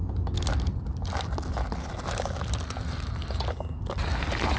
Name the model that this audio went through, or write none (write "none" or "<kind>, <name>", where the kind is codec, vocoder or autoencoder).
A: none